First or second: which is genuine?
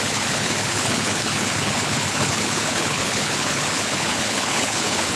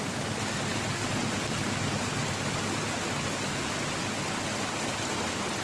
second